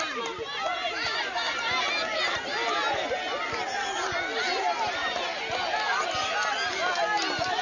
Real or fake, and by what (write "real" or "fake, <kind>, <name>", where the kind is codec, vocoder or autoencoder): real